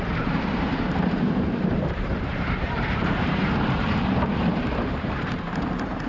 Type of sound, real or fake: fake